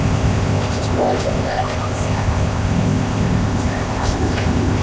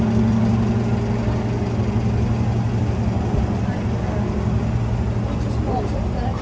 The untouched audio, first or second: second